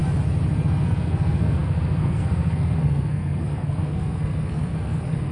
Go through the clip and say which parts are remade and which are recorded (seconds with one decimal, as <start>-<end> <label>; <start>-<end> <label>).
0.0-0.8 recorded; 0.8-5.3 remade